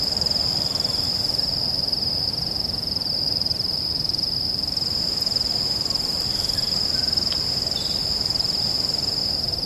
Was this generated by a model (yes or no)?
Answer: yes